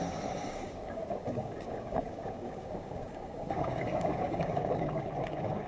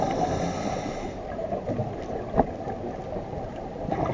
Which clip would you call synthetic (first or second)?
first